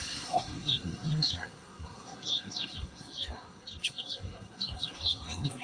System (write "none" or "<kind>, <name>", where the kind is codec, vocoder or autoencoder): codec, SNAC